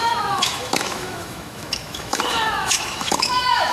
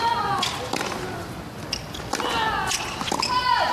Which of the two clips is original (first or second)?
second